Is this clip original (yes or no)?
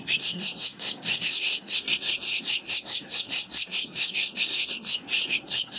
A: no